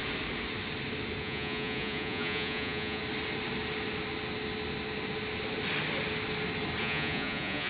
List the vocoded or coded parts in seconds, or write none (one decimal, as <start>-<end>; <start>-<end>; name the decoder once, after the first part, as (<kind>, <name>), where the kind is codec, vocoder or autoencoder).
1.2-3.0 (vocoder, Vocos); 6.8-7.7